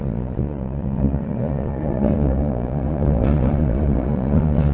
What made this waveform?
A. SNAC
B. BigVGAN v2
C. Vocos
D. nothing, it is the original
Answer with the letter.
C